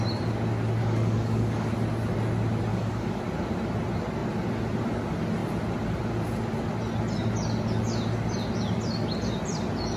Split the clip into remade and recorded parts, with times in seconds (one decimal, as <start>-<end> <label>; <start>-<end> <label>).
0.0-0.8 recorded; 0.8-1.7 remade; 1.7-2.7 recorded; 2.7-3.2 remade; 3.2-10.0 recorded